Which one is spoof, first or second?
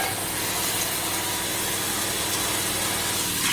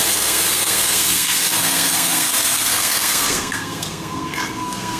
second